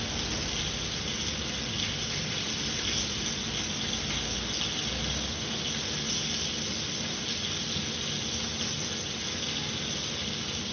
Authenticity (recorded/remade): recorded